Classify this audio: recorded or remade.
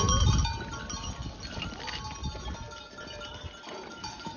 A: recorded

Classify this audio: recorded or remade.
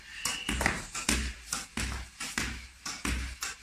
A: recorded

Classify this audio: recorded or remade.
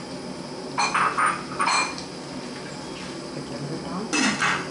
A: recorded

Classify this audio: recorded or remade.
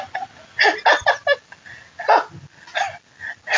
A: recorded